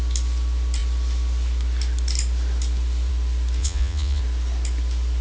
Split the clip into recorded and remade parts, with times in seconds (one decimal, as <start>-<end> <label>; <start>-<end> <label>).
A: 0.0-3.6 recorded; 3.6-4.2 remade; 4.2-5.2 recorded